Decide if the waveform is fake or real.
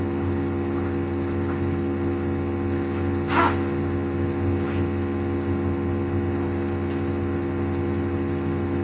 real